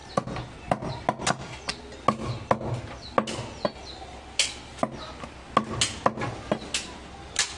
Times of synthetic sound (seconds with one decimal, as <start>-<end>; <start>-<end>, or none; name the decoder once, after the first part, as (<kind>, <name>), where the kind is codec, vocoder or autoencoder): 0.0-0.9 (vocoder, BigVGAN v2)